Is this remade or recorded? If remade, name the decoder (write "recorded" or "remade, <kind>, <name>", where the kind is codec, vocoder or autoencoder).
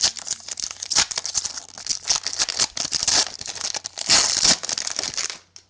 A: recorded